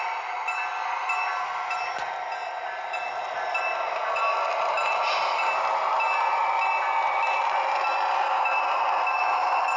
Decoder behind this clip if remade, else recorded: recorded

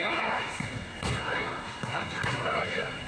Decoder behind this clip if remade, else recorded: remade, codec, SNAC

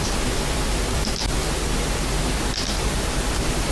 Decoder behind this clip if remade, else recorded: recorded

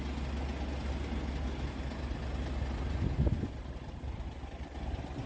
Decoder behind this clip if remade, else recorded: recorded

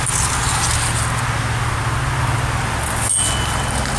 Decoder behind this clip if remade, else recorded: recorded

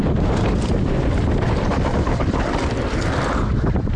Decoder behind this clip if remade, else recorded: recorded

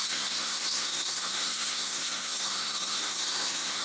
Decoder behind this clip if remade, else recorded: remade, codec, SNAC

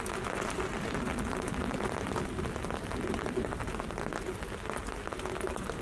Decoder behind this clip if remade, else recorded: recorded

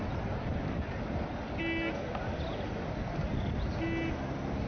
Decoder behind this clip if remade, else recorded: recorded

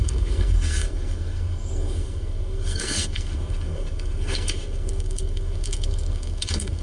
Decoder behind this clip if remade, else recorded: remade, codec, SNAC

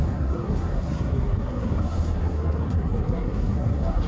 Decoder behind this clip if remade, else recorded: remade, codec, SNAC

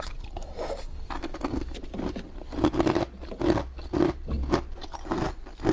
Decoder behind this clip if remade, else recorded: recorded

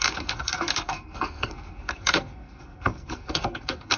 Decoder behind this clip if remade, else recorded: remade, codec, SNAC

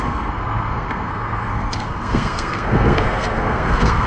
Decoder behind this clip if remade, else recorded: remade, codec, SNAC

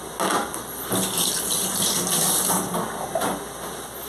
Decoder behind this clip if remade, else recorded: recorded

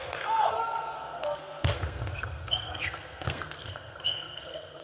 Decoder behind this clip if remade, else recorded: remade, codec, SNAC